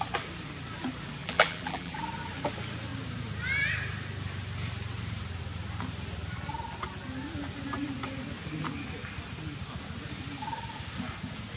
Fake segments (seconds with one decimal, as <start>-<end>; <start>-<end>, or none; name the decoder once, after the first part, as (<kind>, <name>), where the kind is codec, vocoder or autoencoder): 1.2-2.0 (vocoder, BigVGAN v2)